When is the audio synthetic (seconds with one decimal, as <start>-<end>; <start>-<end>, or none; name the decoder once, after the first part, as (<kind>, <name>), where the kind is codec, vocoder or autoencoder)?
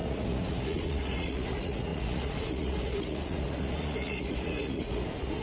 0.0-5.4 (vocoder, Vocos)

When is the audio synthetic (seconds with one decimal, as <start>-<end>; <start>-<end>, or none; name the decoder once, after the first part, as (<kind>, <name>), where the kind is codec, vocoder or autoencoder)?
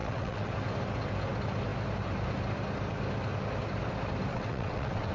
0.0-0.5 (vocoder, WaveNeXt); 4.3-5.1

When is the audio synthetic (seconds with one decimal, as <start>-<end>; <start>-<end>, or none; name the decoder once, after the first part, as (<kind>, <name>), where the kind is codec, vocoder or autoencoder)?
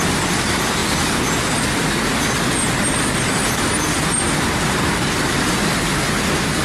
none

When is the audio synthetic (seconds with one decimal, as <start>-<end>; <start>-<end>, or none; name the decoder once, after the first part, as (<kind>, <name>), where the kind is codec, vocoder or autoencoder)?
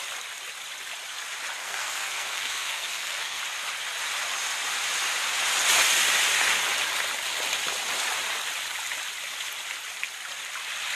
1.6-3.4 (codec, SNAC)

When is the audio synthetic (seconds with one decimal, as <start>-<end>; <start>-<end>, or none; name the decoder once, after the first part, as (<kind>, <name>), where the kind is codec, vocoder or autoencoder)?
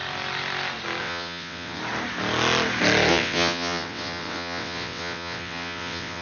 1.0-1.8 (vocoder, WaveNeXt); 3.1-6.2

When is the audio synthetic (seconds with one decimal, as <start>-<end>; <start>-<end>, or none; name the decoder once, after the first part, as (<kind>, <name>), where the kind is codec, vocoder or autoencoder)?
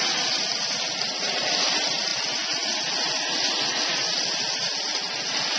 none